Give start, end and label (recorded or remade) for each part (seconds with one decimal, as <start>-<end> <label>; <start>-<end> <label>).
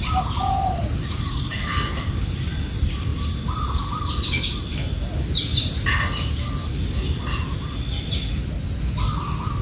0.0-9.6 recorded